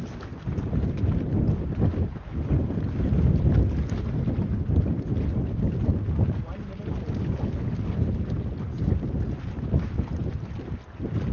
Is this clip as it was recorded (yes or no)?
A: yes